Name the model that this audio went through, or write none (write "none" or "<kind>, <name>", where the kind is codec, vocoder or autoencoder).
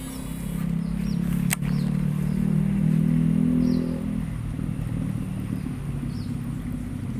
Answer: none